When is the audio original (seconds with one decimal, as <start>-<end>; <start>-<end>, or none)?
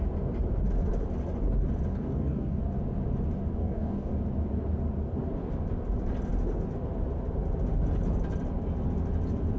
0.0-1.9; 2.6-3.6; 4.1-9.6